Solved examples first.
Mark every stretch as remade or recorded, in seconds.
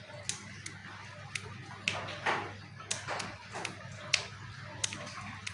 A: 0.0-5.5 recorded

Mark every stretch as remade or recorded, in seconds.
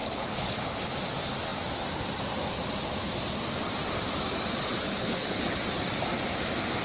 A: 0.0-0.9 remade; 0.9-4.7 recorded; 4.7-5.6 remade; 5.6-6.8 recorded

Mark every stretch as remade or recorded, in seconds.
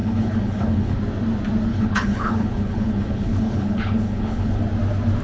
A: 0.0-1.0 remade; 1.0-1.7 recorded; 1.7-4.6 remade; 4.6-5.2 recorded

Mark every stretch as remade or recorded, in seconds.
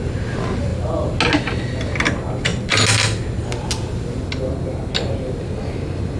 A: 0.0-6.2 recorded